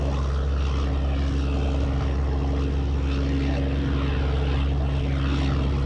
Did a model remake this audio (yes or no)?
no